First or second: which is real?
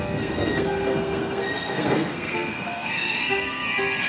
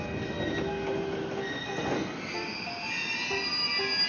second